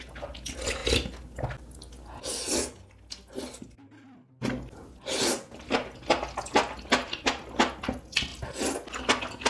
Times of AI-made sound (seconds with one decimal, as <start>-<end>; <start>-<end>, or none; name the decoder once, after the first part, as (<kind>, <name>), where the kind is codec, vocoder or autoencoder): none